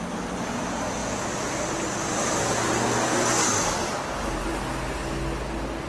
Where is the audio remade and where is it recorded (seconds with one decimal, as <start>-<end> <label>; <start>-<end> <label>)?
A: 0.0-5.9 recorded